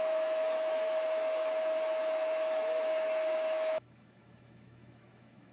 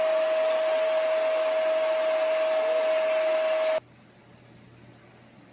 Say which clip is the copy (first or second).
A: first